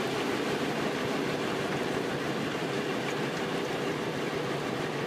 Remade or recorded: recorded